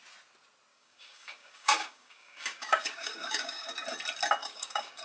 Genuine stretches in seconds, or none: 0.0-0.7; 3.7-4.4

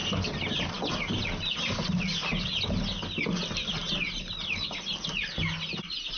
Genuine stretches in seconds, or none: 0.0-3.8; 5.0-6.2

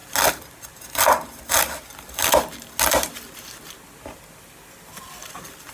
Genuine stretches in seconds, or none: 0.0-5.7

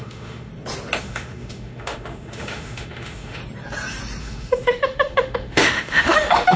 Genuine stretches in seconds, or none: 0.5-1.0; 3.4-4.2

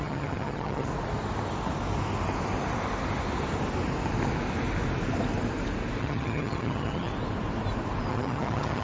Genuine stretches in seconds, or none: 0.9-6.0; 7.1-8.1

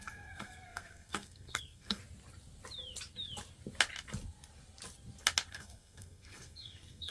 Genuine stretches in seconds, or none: 2.0-5.5

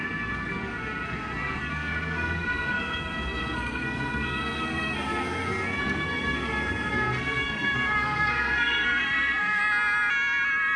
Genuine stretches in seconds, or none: 9.6-10.8

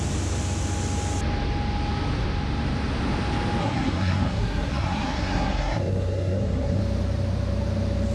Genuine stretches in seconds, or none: 0.0-3.6; 6.8-8.1